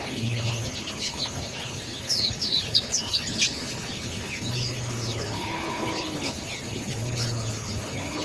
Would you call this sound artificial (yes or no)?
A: yes